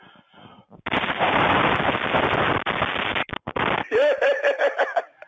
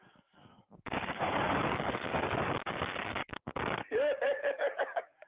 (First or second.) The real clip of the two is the first